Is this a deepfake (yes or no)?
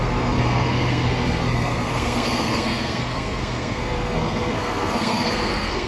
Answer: yes